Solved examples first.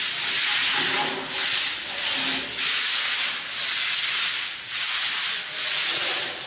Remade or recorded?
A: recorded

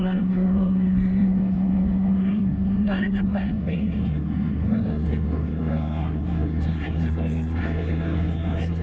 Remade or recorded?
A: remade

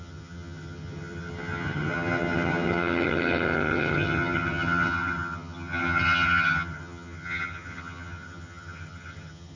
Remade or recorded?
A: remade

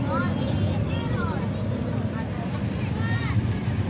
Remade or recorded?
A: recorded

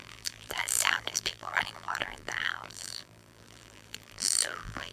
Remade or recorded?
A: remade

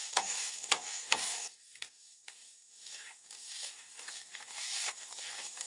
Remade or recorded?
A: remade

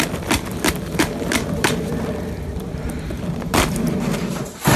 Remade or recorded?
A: remade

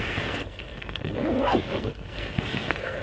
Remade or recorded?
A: remade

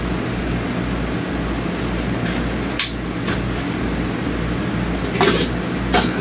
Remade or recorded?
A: recorded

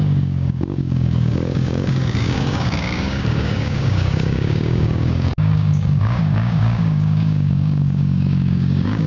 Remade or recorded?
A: remade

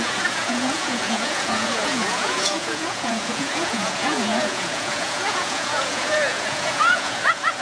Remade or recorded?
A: remade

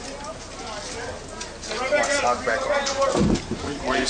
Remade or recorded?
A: recorded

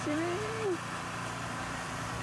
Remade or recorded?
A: remade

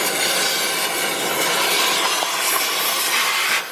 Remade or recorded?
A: recorded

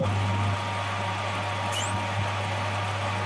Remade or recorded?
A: recorded